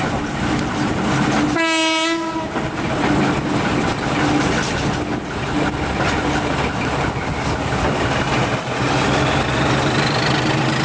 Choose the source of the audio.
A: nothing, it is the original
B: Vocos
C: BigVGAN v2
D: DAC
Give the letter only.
A